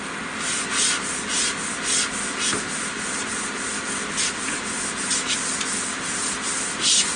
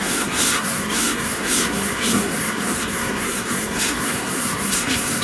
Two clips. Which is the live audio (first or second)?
first